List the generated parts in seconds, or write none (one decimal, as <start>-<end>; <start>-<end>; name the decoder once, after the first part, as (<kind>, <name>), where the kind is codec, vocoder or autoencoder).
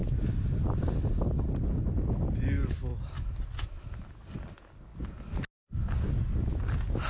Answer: none